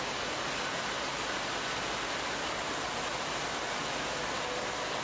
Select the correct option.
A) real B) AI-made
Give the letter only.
A